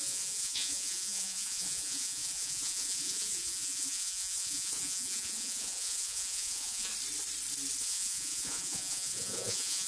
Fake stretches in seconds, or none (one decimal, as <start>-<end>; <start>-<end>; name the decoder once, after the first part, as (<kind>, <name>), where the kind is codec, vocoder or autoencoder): 0.0-6.9 (vocoder, Vocos); 7.8-9.9